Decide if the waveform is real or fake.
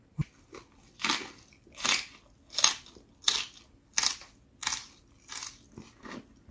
real